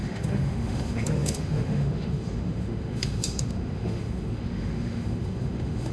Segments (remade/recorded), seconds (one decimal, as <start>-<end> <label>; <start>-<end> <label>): 0.0-5.9 remade